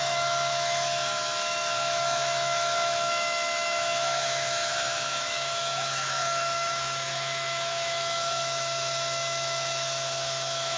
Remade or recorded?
remade